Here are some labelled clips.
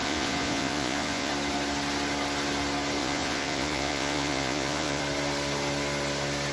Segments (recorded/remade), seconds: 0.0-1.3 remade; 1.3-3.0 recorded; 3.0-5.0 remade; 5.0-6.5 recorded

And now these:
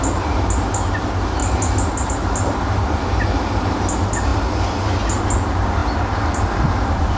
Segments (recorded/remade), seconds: 0.0-7.2 recorded